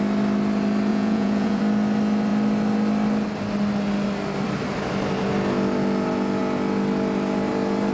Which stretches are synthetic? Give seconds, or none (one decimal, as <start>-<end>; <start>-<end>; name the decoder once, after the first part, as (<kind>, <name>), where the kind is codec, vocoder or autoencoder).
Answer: 0.9-1.6 (vocoder, Vocos)